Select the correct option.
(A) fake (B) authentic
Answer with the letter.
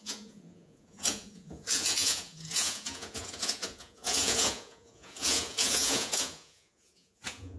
A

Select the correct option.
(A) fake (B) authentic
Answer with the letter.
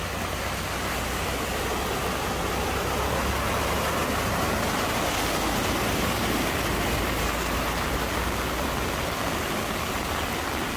B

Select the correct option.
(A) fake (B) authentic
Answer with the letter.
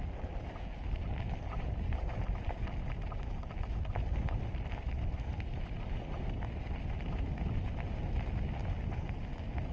B